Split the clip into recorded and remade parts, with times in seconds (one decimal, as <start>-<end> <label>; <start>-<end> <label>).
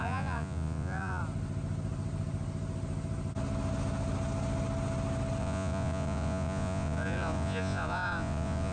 0.0-1.2 remade; 1.2-5.4 recorded; 5.4-8.7 remade